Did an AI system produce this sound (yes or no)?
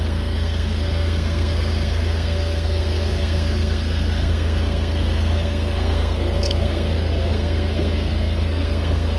yes